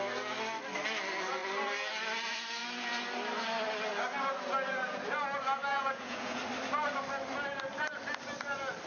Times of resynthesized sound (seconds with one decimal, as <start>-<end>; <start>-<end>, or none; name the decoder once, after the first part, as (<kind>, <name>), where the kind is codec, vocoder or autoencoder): 5.7-6.4 (vocoder, Vocos)